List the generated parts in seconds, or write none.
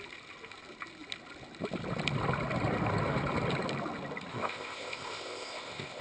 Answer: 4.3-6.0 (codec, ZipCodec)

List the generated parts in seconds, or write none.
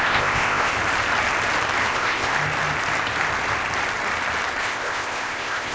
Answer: 0.0-0.7 (codec, ZipCodec); 1.9-2.3; 4.6-5.7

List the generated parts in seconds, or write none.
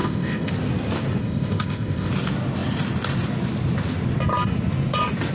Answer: 0.0-0.5 (codec, ZipCodec); 1.2-2.1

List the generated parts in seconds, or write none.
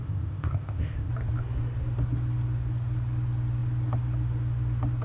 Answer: 0.0-1.1 (codec, ZipCodec)